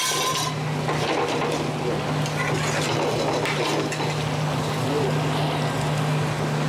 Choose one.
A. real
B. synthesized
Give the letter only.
A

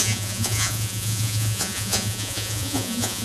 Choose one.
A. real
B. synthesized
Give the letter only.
B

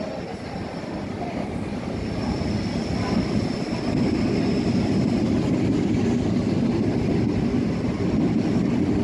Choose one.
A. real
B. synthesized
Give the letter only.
A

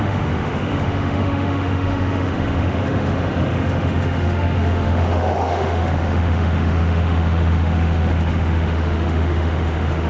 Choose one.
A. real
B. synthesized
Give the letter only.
B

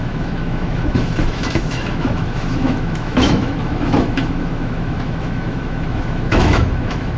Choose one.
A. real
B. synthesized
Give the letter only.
B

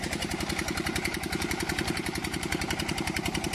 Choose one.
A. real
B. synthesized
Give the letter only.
B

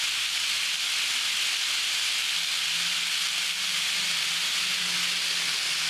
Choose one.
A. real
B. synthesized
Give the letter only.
A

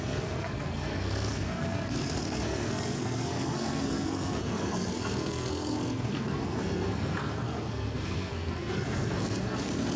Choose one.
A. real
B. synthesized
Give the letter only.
B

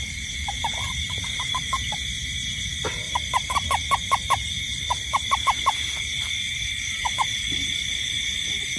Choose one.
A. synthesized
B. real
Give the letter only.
A